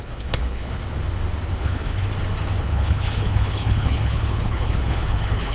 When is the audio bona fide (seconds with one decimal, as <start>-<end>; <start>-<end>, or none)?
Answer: 0.8-1.6; 2.1-2.6